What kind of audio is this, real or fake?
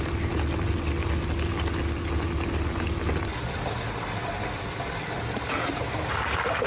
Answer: real